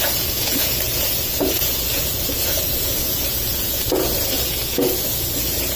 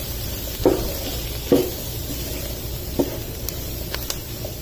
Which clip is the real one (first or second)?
second